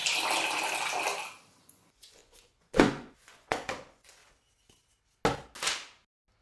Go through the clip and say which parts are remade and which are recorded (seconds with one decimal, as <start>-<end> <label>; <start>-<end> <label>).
0.0-1.6 recorded; 1.6-4.2 remade; 4.2-6.4 recorded